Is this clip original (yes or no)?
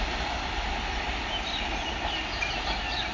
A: yes